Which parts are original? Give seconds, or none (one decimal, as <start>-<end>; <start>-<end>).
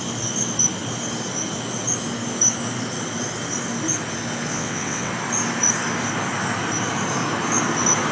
0.0-4.5; 5.1-8.1